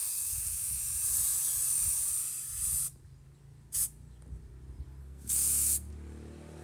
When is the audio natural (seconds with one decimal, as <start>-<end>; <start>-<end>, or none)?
0.8-5.0; 5.9-6.6